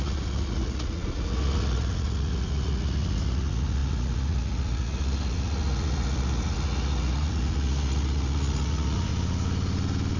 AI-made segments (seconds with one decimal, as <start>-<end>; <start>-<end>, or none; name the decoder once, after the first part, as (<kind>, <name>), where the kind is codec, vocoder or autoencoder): 0.0-9.1 (vocoder, Vocos)